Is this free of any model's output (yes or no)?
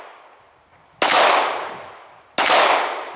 yes